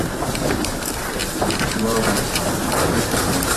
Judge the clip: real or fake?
fake